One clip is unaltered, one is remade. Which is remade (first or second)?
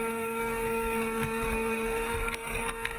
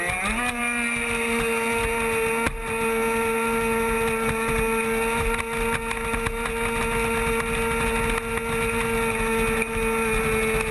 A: first